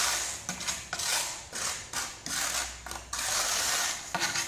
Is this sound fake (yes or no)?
no